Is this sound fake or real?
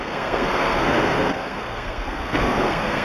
fake